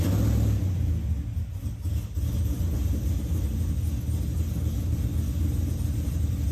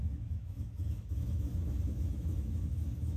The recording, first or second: first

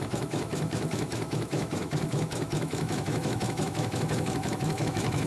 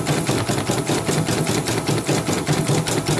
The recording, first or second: second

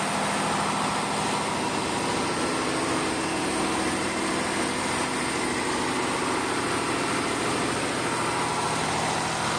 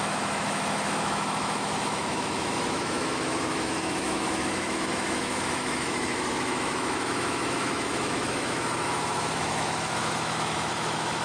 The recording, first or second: first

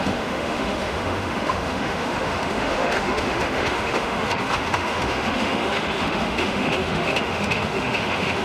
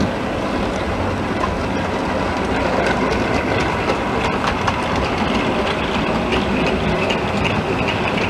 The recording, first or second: second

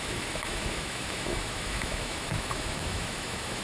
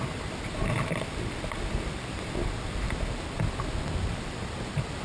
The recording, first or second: second